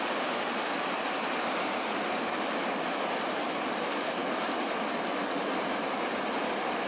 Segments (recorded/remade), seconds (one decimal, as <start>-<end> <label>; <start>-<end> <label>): 0.0-4.2 recorded; 4.2-5.1 remade; 5.1-6.9 recorded